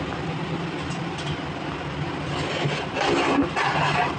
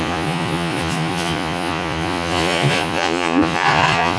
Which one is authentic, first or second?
first